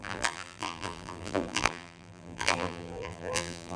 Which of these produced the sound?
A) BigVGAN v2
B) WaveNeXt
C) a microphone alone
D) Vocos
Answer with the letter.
A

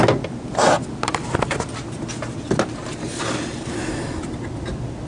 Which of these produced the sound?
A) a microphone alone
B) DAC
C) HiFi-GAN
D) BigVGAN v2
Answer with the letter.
A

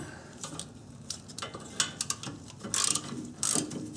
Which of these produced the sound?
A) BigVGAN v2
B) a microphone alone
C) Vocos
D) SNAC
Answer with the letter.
B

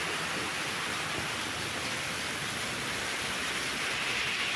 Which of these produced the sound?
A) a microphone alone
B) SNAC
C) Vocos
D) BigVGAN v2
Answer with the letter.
A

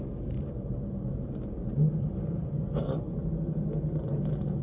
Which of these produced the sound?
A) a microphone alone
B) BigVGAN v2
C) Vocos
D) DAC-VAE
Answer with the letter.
B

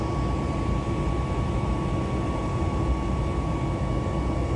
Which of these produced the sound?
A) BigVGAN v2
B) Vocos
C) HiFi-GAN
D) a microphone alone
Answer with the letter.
D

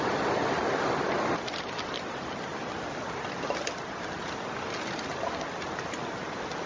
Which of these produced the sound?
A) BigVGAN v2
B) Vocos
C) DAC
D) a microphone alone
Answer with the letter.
A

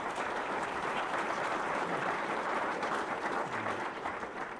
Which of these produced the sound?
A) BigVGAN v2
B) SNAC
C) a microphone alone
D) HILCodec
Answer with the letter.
A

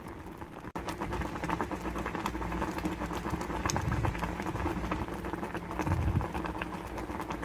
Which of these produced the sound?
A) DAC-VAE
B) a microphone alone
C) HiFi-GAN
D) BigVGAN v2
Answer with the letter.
B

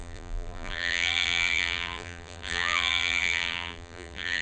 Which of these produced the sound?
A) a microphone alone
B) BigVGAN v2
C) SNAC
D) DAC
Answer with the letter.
B